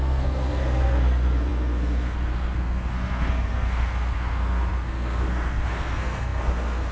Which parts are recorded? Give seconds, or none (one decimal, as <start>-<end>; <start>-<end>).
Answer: none